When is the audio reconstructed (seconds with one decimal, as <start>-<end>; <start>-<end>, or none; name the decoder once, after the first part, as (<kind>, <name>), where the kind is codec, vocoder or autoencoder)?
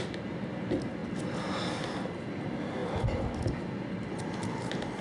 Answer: none